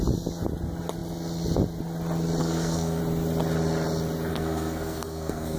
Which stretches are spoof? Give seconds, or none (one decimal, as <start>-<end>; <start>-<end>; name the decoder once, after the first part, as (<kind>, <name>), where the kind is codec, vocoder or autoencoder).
2.4-3.0 (codec, SNAC); 4.3-5.6